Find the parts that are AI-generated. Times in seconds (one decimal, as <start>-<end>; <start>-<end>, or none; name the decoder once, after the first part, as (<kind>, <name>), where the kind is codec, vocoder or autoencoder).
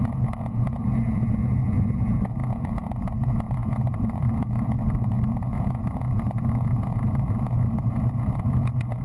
0.0-9.0 (vocoder, Vocos)